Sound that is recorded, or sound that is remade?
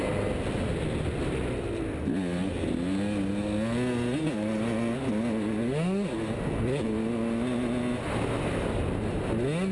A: recorded